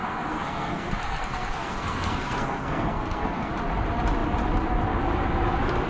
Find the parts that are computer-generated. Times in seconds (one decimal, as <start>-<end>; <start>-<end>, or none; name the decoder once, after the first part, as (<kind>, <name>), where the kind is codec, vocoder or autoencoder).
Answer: 0.0-3.5 (codec, SNAC)